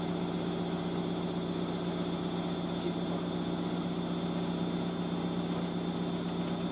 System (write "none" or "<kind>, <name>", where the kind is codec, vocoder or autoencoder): none